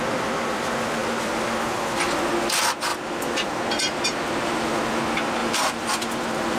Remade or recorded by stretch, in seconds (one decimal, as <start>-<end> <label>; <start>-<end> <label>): 0.0-2.9 recorded; 2.9-4.8 remade; 4.8-5.4 recorded; 5.4-6.6 remade